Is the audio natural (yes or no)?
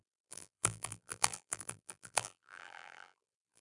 no